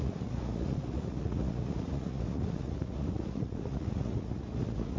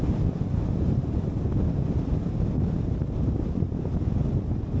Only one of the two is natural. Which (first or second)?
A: second